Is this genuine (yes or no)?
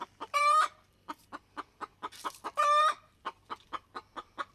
no